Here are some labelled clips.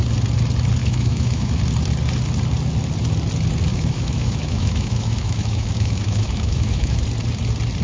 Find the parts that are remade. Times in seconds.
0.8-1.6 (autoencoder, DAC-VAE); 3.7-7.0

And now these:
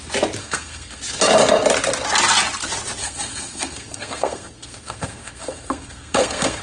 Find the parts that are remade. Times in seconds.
0.4-1.0 (codec, SNAC); 3.0-6.6

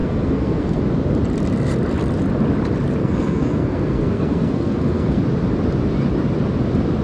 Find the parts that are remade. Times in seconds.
0.0-0.8 (codec, SNAC); 3.0-5.2

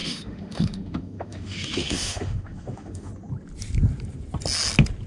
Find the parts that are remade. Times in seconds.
0.0-3.1 (autoencoder, DAC-VAE)

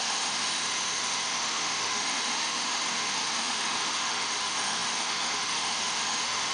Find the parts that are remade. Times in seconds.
0.0-6.5 (autoencoder, DAC-VAE)

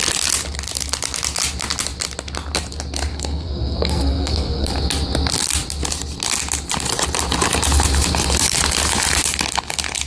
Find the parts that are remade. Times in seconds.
3.1-4.7 (codec, SNAC)